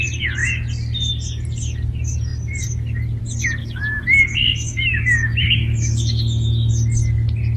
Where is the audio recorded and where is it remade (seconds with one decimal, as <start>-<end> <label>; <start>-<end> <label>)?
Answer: 0.0-3.6 recorded; 3.6-6.7 remade; 6.7-7.6 recorded